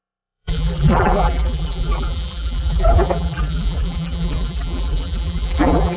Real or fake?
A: fake